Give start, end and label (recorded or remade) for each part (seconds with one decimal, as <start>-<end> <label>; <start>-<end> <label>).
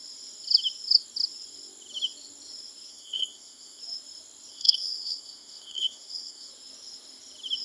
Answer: 0.0-2.9 recorded; 2.9-3.8 remade; 3.8-4.5 recorded; 4.5-6.5 remade; 6.5-7.6 recorded